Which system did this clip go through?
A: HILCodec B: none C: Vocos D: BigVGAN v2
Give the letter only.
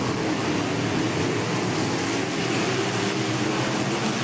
B